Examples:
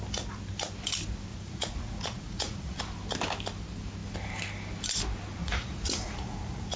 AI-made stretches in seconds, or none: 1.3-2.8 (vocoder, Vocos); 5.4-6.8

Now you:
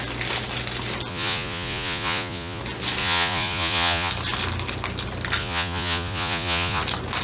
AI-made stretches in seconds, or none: 1.1-2.6 (vocoder, Vocos); 3.0-4.1; 5.4-6.8

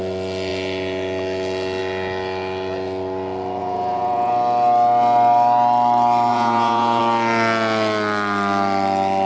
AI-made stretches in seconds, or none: 3.6-4.3 (vocoder, Vocos); 6.3-7.0

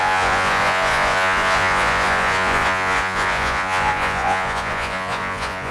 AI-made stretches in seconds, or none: 0.0-5.7 (vocoder, Vocos)